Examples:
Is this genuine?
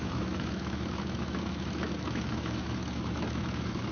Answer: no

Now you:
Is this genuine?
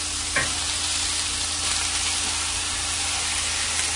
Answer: yes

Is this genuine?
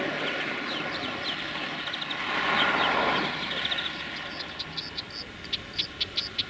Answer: yes